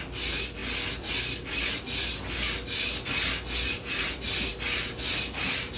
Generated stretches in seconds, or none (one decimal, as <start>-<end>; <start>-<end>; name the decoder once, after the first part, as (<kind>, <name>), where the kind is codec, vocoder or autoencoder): none